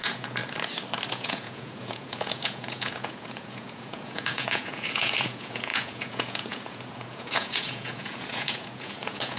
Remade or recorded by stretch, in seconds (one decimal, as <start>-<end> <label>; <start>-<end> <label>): 0.0-0.4 remade; 0.4-1.1 recorded; 1.1-9.4 remade

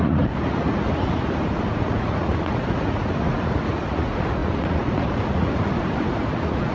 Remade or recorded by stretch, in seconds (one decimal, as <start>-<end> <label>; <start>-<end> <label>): 0.0-6.7 remade

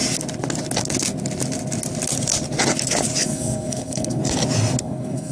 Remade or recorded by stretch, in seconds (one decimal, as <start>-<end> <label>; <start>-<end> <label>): 0.0-3.2 recorded; 3.2-4.2 remade; 4.2-4.8 recorded; 4.8-5.3 remade

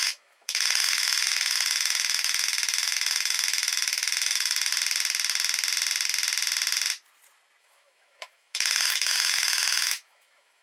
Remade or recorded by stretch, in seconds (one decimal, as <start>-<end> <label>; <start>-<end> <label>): 0.0-4.7 remade; 4.7-7.6 recorded; 7.6-10.6 remade

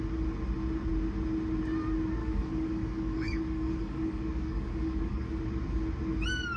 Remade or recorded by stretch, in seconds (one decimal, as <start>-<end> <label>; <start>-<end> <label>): 0.0-2.2 recorded; 2.2-5.4 remade; 5.4-6.6 recorded

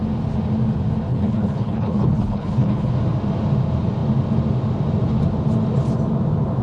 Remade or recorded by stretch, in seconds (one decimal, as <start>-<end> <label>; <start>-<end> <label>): 0.0-1.1 recorded; 1.1-2.9 remade; 2.9-6.6 recorded

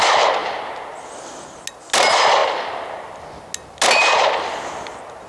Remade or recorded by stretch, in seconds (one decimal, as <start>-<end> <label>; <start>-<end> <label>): 0.0-5.3 recorded